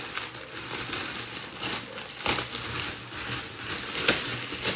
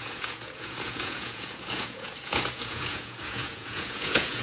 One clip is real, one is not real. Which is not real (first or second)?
second